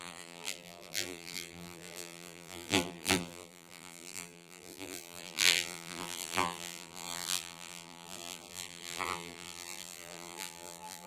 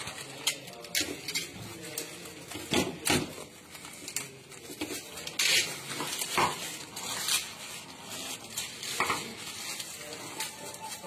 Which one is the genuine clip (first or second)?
second